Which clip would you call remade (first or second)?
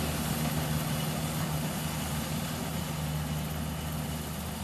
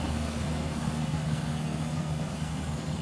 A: second